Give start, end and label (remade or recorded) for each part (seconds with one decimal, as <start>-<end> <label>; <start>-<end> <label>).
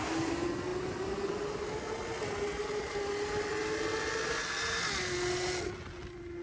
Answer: 0.0-6.4 recorded